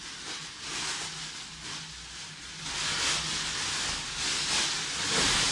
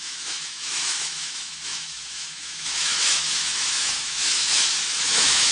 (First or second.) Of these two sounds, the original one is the first